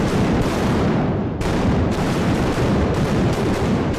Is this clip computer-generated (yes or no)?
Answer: yes